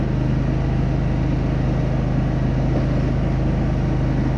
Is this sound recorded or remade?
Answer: recorded